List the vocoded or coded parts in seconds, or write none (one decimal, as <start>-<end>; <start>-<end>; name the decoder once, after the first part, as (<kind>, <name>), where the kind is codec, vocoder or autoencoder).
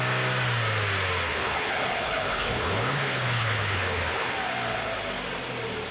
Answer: 1.3-4.3 (codec, HILCodec)